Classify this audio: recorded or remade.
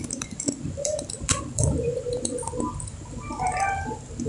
remade